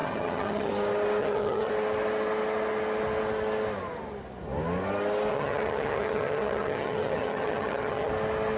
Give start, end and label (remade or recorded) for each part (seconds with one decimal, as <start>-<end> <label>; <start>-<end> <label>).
0.0-0.7 remade; 0.7-1.2 recorded; 1.2-1.7 remade; 1.7-5.3 recorded; 5.3-8.1 remade; 8.1-8.6 recorded